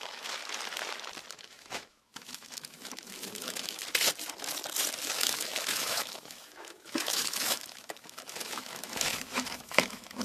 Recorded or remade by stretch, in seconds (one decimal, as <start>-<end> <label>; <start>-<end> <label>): 0.0-0.4 remade; 0.4-1.3 recorded; 1.3-3.8 remade; 3.8-5.0 recorded; 5.0-10.2 remade